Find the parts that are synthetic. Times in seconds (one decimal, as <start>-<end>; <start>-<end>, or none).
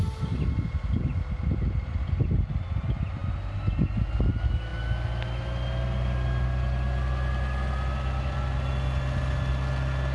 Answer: none